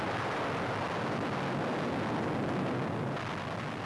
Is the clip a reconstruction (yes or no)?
no